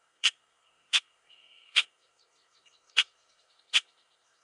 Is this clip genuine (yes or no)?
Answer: no